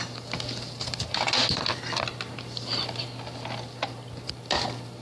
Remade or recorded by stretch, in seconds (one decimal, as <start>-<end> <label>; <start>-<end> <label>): 0.0-5.0 recorded